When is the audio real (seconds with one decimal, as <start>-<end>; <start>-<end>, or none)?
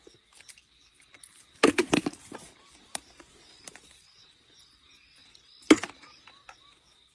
0.0-0.6; 4.9-7.1